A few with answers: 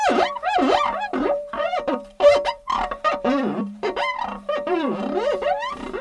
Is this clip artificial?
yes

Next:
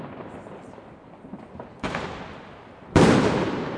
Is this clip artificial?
yes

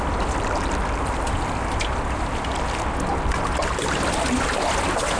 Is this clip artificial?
no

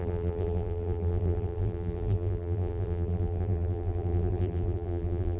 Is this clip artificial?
yes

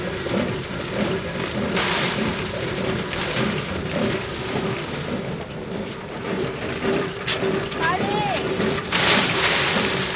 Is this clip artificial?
yes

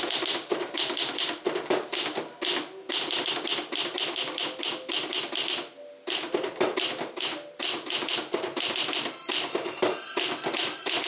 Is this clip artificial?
no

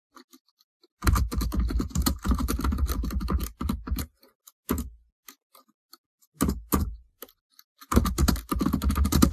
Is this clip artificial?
no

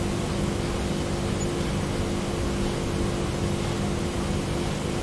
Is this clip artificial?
no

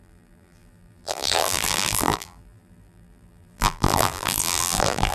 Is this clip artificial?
yes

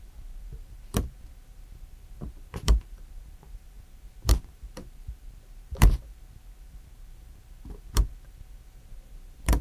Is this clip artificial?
yes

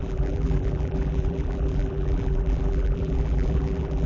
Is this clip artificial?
yes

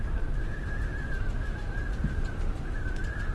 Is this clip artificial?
no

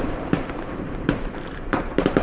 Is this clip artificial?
yes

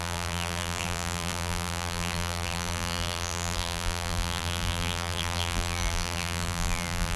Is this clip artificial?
yes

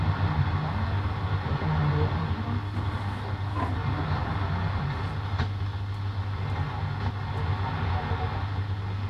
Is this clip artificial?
no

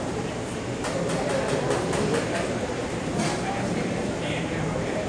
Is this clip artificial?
yes